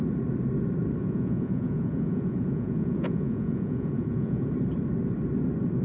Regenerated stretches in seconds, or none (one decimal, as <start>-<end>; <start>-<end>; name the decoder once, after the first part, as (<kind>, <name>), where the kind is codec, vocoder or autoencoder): 1.0-4.5 (vocoder, Vocos)